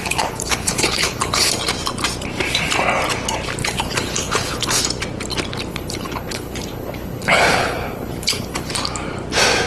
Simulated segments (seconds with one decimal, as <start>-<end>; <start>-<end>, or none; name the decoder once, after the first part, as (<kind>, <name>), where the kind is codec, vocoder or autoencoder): 0.0-1.5 (codec, HILCodec); 3.6-4.8; 5.7-8.7